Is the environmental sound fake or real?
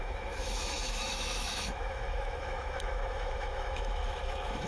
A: fake